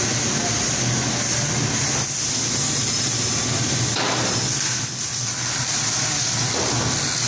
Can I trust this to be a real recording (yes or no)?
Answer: yes